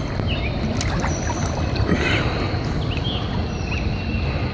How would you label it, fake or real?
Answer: real